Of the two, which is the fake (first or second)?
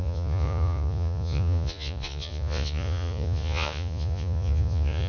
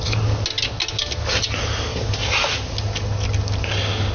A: first